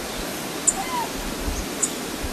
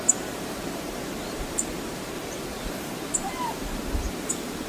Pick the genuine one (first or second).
first